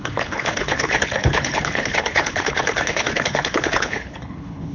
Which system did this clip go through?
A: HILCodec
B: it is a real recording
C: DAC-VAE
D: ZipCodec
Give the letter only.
A